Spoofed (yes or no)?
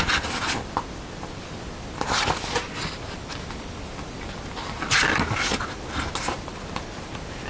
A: no